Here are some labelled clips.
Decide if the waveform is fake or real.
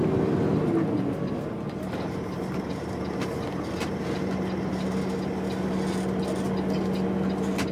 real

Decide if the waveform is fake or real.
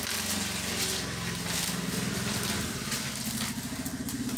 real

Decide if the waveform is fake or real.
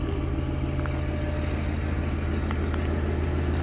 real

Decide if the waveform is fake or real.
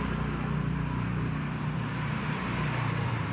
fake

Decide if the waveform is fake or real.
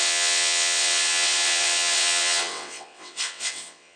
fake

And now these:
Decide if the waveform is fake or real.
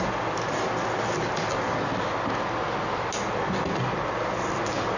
real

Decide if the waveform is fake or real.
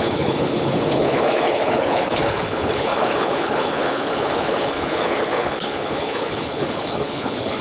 fake